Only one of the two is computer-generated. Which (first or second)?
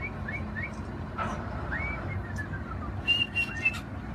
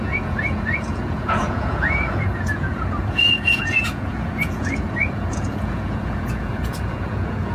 second